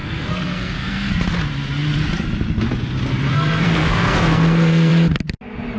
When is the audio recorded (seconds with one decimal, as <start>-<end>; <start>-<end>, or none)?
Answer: 1.1-3.3; 4.9-5.8